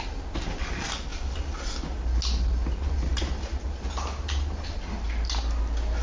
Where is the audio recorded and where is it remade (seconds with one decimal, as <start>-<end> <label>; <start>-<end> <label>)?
0.0-6.0 recorded